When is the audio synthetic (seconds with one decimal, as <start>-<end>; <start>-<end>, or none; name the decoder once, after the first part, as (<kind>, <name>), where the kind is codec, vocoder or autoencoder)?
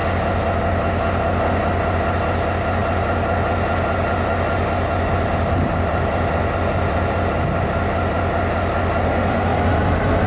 none